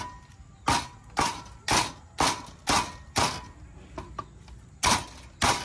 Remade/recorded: recorded